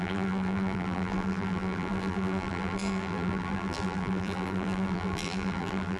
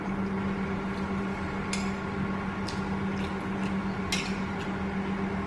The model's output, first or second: first